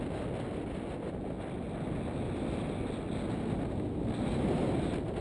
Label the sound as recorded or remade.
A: recorded